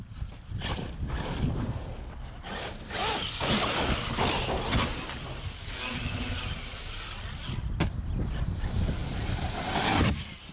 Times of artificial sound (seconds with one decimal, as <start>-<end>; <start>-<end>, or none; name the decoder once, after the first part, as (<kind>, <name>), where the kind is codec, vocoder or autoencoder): none